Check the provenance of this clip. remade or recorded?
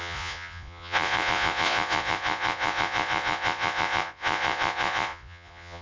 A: remade